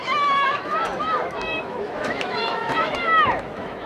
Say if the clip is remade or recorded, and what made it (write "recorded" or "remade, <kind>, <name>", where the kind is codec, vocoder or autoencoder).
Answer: remade, autoencoder, DAC-VAE